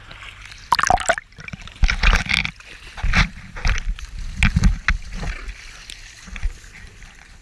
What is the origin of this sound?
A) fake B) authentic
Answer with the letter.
B